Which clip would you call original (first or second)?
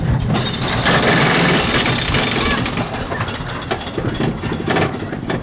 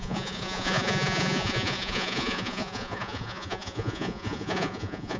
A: first